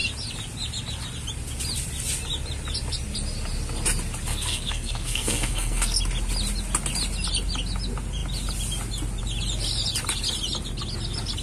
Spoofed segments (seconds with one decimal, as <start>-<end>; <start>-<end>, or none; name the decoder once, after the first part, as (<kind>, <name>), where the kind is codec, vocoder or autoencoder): 4.3-6.0 (codec, SNAC)